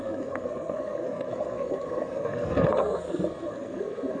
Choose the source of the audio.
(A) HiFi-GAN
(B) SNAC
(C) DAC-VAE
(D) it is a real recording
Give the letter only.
B